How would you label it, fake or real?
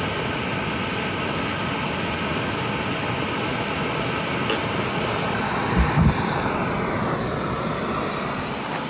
real